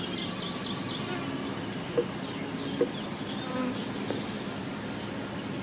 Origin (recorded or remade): recorded